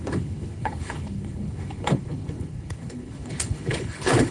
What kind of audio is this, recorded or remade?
remade